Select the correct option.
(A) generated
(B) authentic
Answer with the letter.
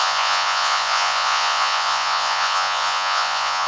A